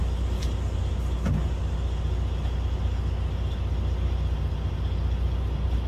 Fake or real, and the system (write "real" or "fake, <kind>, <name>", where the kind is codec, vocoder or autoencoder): real